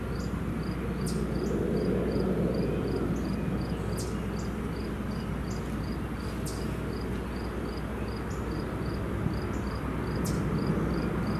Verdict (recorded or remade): recorded